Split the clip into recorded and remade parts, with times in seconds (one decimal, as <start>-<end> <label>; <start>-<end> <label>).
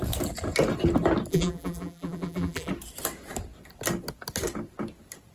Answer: 0.0-1.3 recorded; 1.3-2.7 remade; 2.7-5.3 recorded